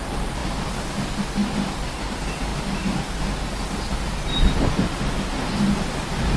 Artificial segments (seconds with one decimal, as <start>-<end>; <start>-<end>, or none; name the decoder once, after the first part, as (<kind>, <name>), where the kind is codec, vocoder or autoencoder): none